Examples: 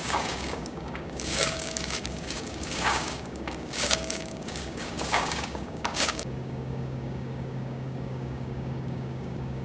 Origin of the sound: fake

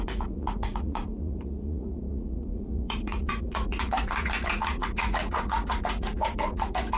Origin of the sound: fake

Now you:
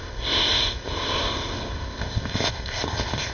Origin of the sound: fake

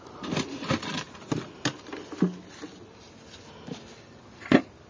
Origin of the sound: real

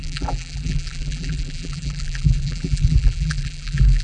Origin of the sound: fake